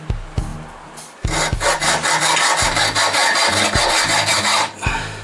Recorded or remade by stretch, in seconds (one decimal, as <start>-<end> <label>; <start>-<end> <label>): 0.0-5.2 recorded